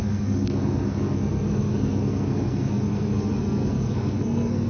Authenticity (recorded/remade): remade